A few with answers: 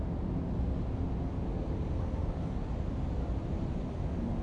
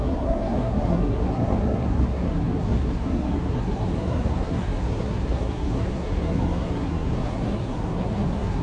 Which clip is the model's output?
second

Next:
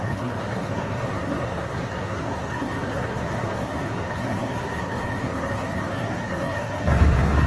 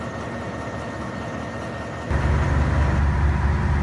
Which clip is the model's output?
first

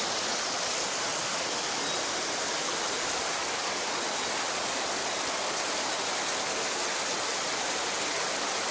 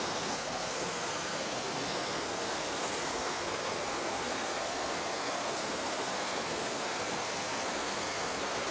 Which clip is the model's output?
second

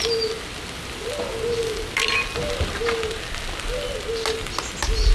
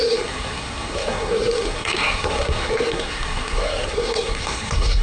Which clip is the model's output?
second